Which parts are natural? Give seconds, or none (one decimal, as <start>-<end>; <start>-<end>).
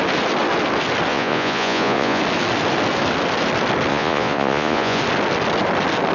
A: 0.0-1.1; 2.2-3.9; 5.0-6.1